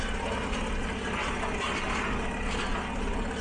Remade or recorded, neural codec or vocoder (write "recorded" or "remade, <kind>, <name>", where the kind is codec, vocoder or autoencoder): recorded